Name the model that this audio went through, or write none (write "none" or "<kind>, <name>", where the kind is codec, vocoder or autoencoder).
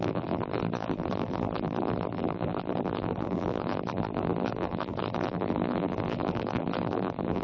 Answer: vocoder, BigVGAN v2